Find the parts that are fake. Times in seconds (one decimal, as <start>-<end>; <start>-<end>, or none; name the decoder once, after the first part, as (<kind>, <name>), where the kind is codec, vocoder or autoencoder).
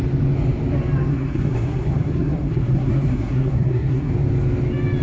1.1-4.1 (codec, SNAC)